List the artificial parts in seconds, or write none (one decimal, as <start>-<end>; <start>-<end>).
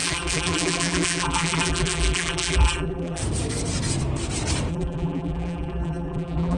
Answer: 0.0-3.2; 4.7-6.6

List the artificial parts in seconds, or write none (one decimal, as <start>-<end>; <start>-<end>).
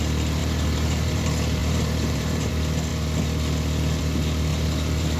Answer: 0.4-1.2; 1.6-2.5; 4.5-5.2